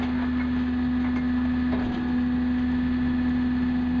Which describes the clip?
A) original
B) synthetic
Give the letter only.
A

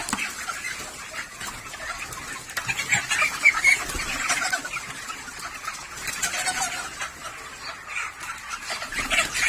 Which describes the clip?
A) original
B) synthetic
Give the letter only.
A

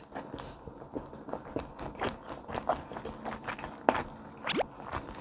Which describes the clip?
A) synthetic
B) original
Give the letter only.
B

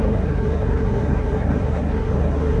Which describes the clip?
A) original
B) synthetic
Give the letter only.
B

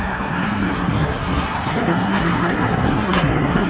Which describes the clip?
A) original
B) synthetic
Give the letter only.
B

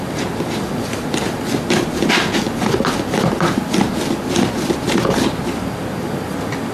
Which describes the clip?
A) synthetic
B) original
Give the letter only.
B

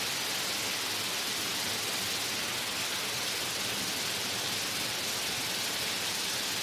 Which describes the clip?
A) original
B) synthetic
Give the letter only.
A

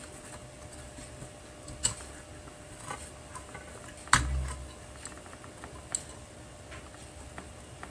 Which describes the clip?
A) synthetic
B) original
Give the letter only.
B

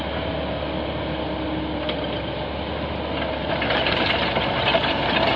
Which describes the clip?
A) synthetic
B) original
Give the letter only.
B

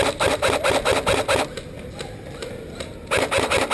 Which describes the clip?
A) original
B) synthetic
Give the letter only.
A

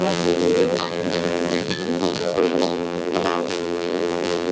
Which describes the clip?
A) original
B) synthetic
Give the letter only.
B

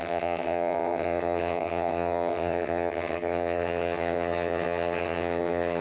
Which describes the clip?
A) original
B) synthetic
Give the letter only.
B